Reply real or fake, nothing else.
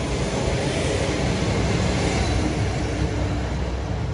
real